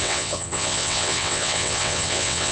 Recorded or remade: remade